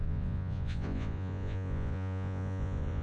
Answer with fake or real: fake